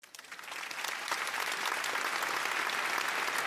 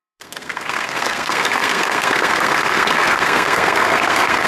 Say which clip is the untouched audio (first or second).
first